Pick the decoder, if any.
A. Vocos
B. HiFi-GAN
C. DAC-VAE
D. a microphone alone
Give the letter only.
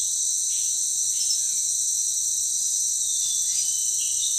D